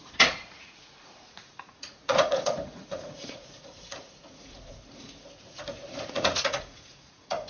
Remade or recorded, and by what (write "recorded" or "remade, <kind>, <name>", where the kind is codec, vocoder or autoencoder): remade, vocoder, Vocos